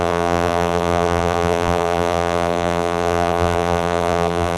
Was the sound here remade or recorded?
remade